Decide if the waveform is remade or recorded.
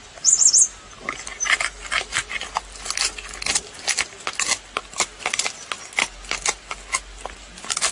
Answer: recorded